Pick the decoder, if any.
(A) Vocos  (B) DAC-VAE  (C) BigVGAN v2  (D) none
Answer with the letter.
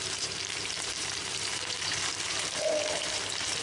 C